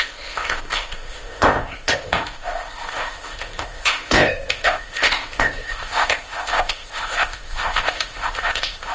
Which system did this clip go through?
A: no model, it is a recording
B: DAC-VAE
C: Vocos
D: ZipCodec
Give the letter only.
D